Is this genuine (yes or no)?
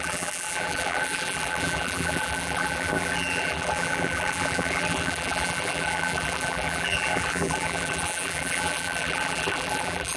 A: no